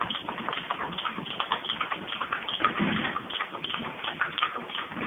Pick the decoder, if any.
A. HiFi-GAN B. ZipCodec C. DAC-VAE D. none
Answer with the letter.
D